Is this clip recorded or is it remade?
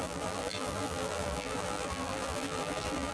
remade